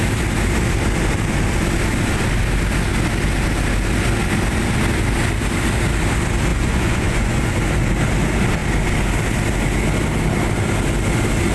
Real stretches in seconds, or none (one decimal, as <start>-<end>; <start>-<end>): 0.0-6.5; 7.5-11.5